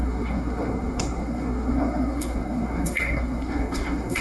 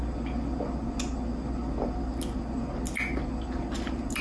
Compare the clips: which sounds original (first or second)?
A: second